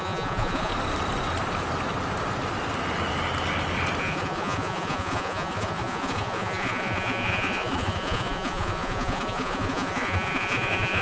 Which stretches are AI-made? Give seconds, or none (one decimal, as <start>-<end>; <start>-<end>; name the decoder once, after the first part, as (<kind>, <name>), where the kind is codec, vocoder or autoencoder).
0.0-0.7 (vocoder, Vocos); 4.0-11.0